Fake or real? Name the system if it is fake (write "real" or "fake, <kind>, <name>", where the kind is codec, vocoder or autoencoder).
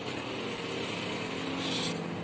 real